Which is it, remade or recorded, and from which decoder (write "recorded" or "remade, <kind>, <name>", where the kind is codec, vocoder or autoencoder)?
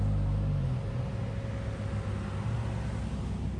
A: recorded